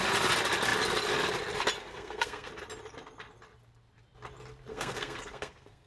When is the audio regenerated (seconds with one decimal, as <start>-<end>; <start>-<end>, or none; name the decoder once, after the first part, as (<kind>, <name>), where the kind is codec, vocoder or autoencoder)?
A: 1.8-2.5 (codec, SNAC); 4.7-5.9